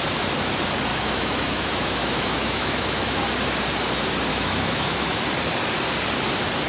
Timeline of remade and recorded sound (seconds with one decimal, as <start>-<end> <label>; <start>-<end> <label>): 0.0-0.9 recorded; 0.9-3.2 remade; 3.2-4.3 recorded; 4.3-5.2 remade; 5.2-6.7 recorded